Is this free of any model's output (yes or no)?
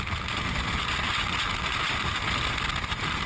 yes